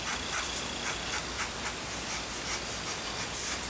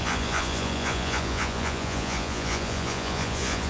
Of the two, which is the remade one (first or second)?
second